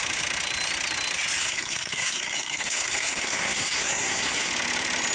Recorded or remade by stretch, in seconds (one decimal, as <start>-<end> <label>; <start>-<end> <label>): 0.0-1.4 recorded; 1.4-4.5 remade; 4.5-5.1 recorded